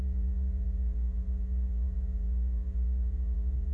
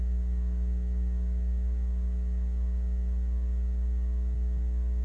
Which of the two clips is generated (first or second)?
first